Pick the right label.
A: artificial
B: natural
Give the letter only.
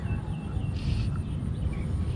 B